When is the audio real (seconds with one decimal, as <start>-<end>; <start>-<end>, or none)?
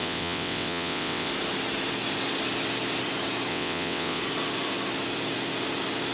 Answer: 1.3-3.5; 4.2-6.1